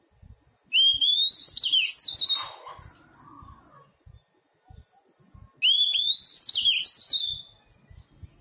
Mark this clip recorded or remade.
recorded